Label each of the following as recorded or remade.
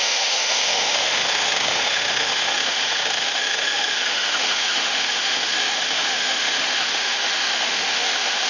remade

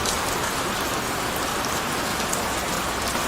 recorded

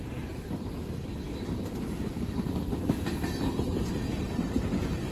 recorded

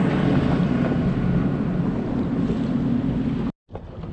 recorded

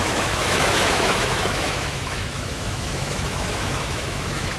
remade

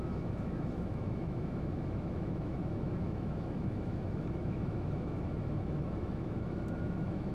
remade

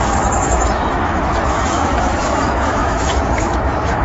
remade